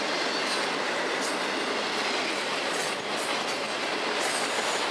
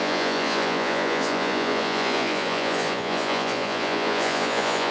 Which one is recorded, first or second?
first